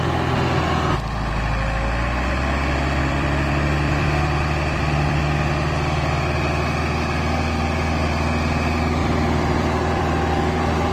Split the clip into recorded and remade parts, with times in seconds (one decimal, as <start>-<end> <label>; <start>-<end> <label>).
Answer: 0.0-3.0 recorded; 3.0-5.2 remade; 5.2-9.0 recorded; 9.0-10.9 remade